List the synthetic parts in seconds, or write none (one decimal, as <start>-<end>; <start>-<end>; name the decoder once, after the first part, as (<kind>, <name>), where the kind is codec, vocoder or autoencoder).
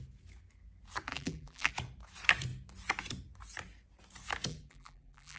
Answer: 1.1-1.7 (vocoder, BigVGAN v2); 4.5-5.4